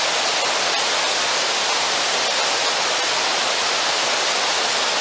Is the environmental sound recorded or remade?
recorded